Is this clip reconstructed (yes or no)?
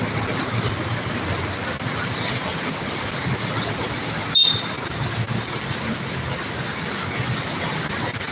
no